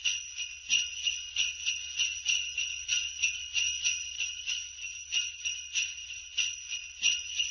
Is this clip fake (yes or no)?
no